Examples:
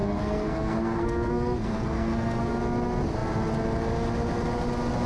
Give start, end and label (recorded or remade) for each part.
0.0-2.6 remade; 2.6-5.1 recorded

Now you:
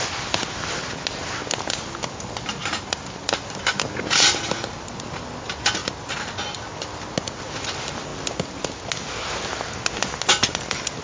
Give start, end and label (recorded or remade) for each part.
0.0-11.0 recorded

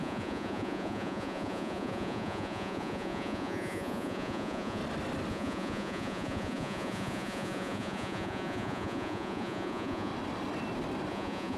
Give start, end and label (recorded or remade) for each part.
0.0-4.8 remade; 4.8-5.3 recorded; 5.3-10.1 remade; 10.1-11.1 recorded; 11.1-11.6 remade

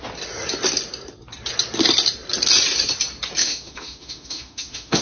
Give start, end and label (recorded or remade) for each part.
0.0-3.4 recorded; 3.4-5.0 remade

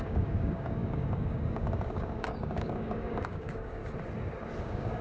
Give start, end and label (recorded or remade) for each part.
0.0-3.8 remade; 3.8-4.6 recorded; 4.6-5.0 remade

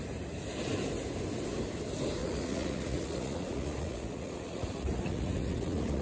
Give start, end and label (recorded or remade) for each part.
0.0-2.2 recorded; 2.2-6.0 remade

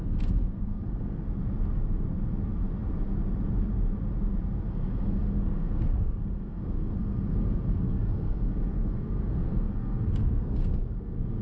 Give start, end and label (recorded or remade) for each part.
0.0-1.2 remade; 1.2-4.7 recorded; 4.7-11.4 remade